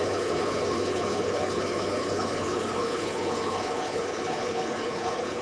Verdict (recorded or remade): remade